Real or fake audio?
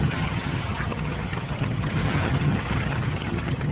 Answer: fake